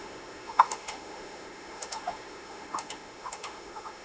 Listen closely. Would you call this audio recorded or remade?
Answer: remade